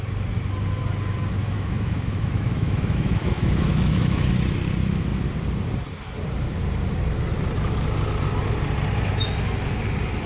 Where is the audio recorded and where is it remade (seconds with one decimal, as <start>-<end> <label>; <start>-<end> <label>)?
0.0-1.4 recorded; 1.4-4.3 remade; 4.3-10.3 recorded

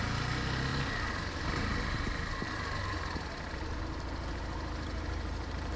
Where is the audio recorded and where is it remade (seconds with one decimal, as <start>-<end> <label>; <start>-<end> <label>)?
0.0-0.7 recorded; 0.7-3.8 remade; 3.8-5.8 recorded

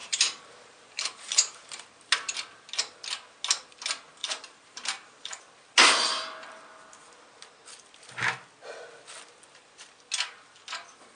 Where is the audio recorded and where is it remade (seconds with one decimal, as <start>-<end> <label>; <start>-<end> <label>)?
0.0-1.9 remade; 1.9-4.2 recorded; 4.2-5.4 remade; 5.4-11.2 recorded